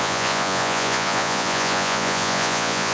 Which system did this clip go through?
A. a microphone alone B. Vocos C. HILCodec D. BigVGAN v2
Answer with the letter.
B